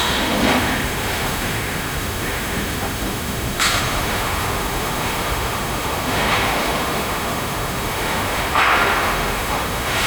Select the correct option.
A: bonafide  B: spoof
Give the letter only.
B